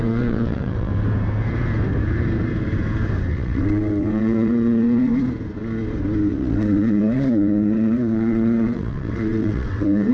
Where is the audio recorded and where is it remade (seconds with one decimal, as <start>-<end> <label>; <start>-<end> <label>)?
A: 0.0-0.9 remade; 0.9-3.3 recorded; 3.3-5.1 remade; 5.1-6.3 recorded; 6.3-10.1 remade